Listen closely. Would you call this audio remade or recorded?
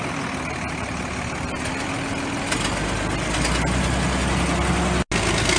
recorded